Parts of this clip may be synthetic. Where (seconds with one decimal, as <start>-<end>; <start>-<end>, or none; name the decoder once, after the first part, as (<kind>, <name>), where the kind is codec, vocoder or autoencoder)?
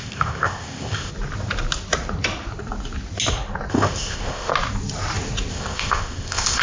0.0-1.1 (codec, ZipCodec); 3.7-4.5; 5.5-6.6